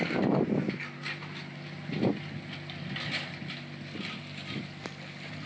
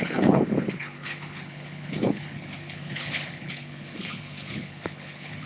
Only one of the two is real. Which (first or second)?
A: first